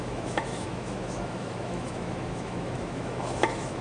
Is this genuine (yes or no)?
no